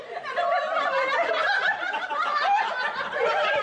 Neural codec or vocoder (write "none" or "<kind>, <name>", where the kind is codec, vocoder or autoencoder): none